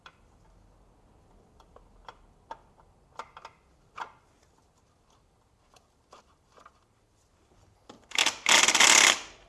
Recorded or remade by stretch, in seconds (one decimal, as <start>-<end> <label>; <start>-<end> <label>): 0.0-9.5 recorded